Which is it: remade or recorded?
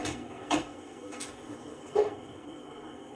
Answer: remade